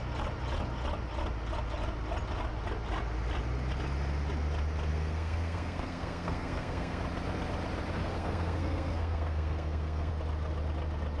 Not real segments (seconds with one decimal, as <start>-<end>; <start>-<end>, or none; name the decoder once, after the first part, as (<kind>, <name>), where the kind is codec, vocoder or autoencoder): 4.9-7.0 (codec, SNAC); 8.0-10.1